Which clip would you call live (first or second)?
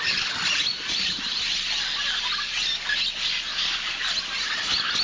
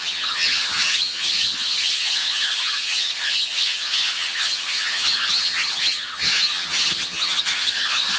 first